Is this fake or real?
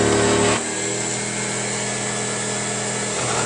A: real